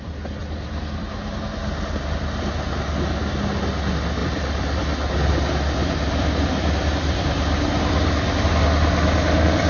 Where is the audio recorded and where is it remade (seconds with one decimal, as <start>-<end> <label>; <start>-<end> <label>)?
0.0-4.2 recorded; 4.2-8.5 remade; 8.5-9.7 recorded